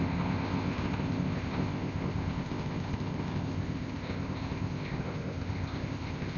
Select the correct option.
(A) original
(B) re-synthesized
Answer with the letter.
B